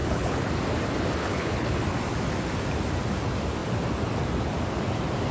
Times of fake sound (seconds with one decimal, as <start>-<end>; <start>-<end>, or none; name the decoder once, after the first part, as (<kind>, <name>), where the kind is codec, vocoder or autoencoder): 0.0-0.5 (codec, HILCodec); 1.2-1.8

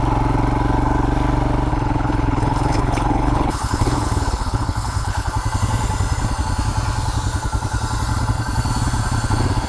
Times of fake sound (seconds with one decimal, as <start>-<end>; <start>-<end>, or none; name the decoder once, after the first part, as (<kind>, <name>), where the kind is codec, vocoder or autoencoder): 1.7-5.3 (codec, HILCodec)

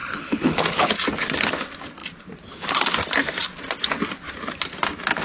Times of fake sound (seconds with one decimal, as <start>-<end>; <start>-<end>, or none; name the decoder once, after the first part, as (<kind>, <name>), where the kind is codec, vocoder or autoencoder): 0.0-0.9 (codec, HILCodec)

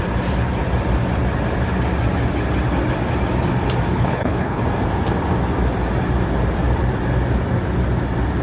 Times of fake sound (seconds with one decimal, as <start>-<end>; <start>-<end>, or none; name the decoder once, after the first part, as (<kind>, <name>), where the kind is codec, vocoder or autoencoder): 3.9-4.6 (codec, HILCodec)

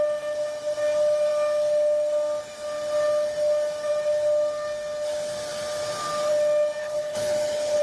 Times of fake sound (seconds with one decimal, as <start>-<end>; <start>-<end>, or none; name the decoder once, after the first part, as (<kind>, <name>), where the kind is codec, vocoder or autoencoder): 6.8-7.8 (codec, HILCodec)